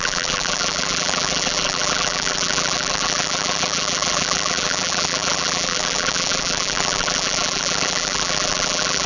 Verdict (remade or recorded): remade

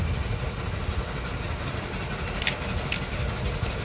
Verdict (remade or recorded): recorded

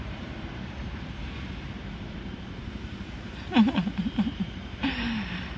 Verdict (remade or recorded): remade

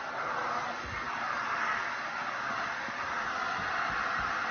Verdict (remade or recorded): recorded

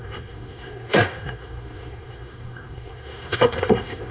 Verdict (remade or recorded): remade